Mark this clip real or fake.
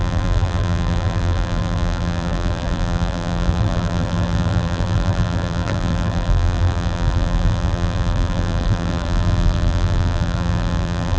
fake